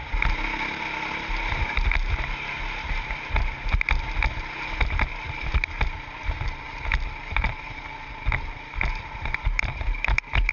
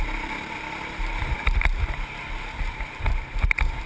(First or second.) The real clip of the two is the first